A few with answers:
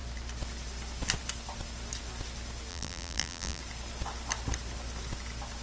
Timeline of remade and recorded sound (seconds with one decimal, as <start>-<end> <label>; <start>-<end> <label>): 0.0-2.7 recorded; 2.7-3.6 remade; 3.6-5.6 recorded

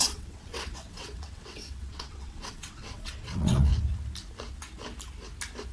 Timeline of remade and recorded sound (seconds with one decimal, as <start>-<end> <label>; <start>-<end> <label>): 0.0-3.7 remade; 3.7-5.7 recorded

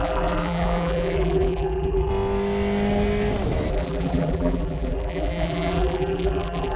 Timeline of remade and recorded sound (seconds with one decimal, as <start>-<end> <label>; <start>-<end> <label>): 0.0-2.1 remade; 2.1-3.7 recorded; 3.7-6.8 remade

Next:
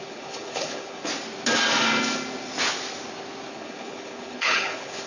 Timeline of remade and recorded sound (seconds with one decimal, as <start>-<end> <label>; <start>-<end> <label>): 0.0-1.1 remade; 1.1-3.5 recorded; 3.5-5.1 remade